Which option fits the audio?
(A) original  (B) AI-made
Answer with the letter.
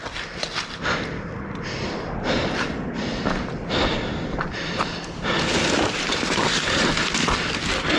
A